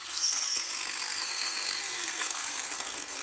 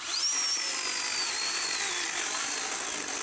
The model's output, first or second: first